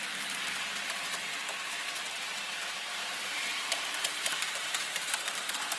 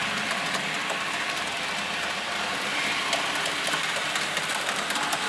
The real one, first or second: second